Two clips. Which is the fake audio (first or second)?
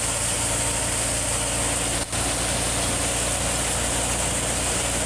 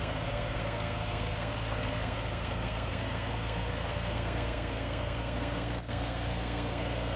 second